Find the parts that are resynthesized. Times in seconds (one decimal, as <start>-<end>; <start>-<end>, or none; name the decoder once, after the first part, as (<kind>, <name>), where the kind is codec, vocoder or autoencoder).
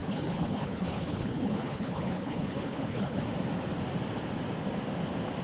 0.0-3.2 (codec, HILCodec)